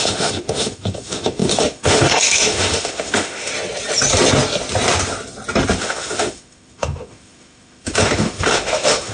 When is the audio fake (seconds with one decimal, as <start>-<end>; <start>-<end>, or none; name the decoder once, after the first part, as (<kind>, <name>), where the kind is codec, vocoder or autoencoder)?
0.0-3.5 (autoencoder, DAC-VAE); 5.8-9.1